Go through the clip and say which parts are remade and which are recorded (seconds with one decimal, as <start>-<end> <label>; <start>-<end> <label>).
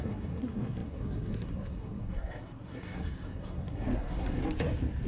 0.0-4.4 remade; 4.4-5.1 recorded